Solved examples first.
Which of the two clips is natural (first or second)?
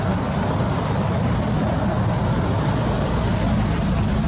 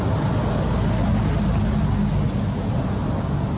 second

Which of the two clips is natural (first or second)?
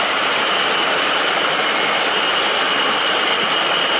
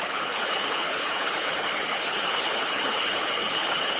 first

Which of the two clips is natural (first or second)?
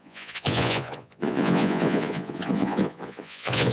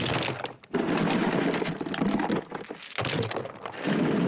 second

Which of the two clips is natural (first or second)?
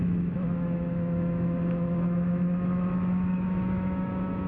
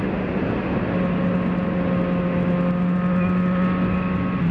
second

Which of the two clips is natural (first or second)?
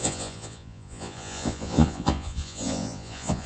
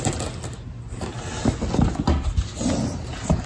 second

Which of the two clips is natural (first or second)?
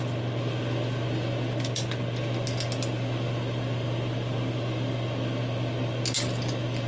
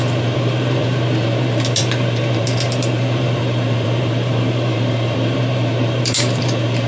first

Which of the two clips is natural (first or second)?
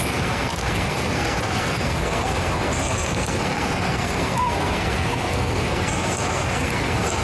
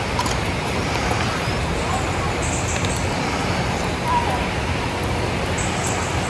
second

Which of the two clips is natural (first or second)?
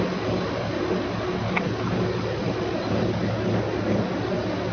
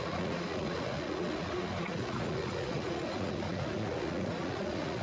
first